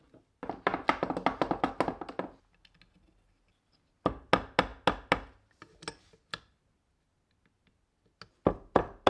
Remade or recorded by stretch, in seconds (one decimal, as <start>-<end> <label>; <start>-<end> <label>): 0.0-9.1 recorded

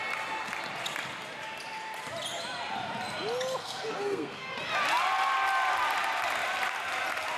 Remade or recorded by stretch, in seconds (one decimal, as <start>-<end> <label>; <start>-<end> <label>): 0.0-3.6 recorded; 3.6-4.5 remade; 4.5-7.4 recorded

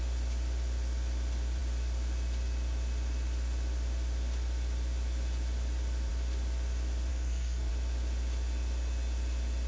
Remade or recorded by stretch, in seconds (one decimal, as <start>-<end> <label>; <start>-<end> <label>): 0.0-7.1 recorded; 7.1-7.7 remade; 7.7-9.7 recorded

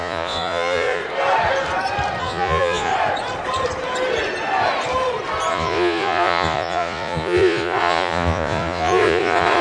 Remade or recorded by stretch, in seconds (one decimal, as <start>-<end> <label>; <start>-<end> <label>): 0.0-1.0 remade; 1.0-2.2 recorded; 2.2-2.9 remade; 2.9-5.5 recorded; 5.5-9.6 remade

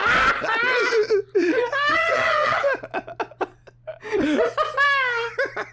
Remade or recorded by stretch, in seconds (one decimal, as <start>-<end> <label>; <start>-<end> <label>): 0.0-1.9 recorded; 1.9-2.6 remade; 2.6-5.7 recorded

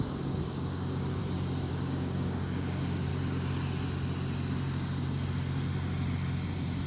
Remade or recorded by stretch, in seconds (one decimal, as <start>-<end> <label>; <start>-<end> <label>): 0.0-1.2 remade; 1.2-1.7 recorded; 1.7-3.1 remade; 3.1-6.9 recorded